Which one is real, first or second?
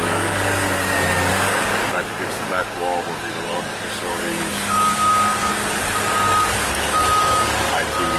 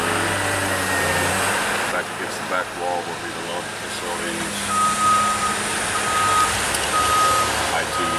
second